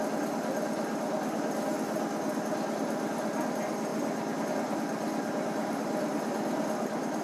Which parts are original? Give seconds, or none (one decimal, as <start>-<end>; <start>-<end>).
0.0-7.2